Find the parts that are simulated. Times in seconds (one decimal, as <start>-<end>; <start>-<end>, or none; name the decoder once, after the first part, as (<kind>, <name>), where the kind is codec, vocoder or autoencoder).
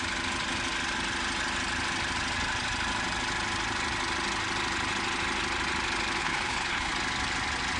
6.2-6.9 (codec, HILCodec)